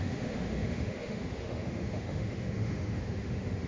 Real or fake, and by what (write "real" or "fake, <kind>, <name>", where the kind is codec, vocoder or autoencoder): fake, autoencoder, DAC-VAE